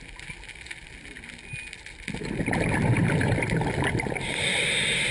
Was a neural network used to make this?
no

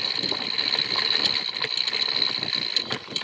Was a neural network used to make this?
no